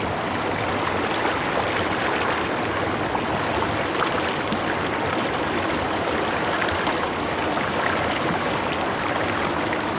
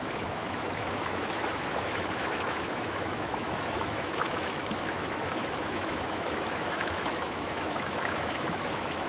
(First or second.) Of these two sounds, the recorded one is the first